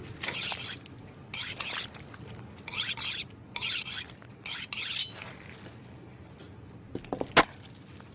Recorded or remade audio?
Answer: recorded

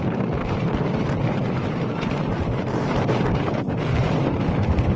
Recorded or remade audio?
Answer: remade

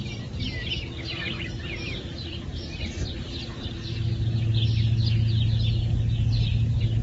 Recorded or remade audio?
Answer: recorded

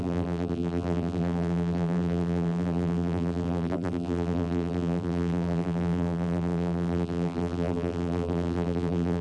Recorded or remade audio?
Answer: remade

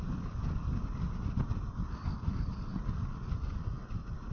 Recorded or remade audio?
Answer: recorded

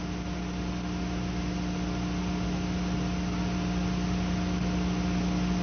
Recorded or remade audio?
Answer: recorded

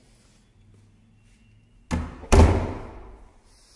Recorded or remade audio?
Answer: recorded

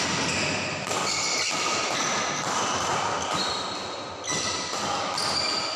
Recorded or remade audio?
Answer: recorded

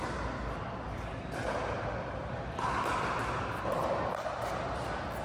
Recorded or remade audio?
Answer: recorded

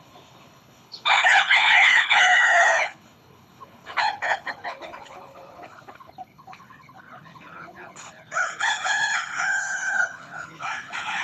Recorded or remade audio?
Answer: remade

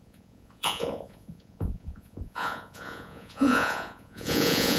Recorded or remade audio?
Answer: remade